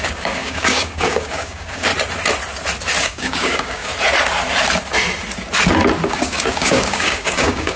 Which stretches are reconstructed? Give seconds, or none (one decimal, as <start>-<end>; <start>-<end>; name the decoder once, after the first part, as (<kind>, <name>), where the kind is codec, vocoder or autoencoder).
0.0-1.9 (codec, DAC); 3.0-3.9; 6.1-7.8